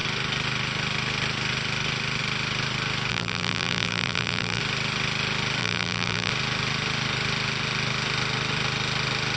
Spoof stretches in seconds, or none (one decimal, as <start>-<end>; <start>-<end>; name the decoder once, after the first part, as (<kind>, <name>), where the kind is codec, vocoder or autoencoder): 3.1-4.6 (vocoder, BigVGAN v2); 5.6-6.3